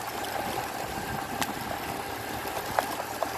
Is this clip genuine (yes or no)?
yes